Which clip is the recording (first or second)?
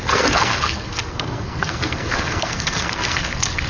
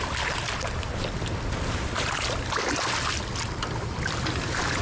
second